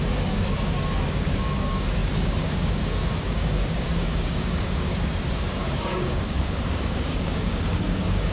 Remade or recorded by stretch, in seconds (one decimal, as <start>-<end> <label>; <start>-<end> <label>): 0.0-8.3 remade